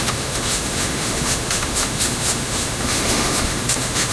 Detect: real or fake fake